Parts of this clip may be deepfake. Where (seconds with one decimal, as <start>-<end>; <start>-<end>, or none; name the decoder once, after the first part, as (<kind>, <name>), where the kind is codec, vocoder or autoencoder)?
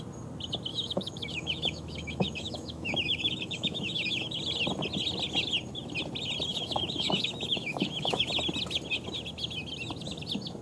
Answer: 0.7-4.4 (autoencoder, DAC-VAE); 6.5-8.2